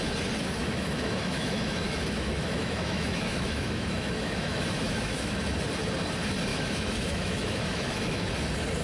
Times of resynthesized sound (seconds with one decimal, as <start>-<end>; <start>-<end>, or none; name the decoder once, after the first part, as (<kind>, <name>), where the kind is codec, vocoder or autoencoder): 0.6-5.4 (autoencoder, DAC-VAE); 6.5-8.3